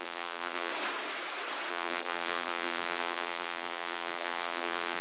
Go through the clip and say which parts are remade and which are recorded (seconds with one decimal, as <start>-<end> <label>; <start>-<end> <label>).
0.0-0.7 remade; 0.7-1.7 recorded; 1.7-5.0 remade